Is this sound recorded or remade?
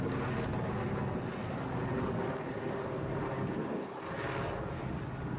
recorded